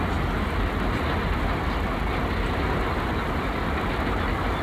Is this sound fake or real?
real